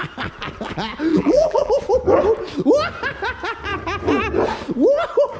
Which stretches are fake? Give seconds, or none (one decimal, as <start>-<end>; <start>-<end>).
1.1-1.7